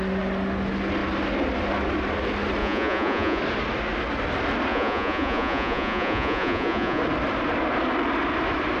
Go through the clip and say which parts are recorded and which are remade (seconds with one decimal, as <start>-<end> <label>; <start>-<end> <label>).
0.0-2.6 recorded; 2.6-3.4 remade; 3.4-4.7 recorded; 4.7-7.0 remade; 7.0-8.8 recorded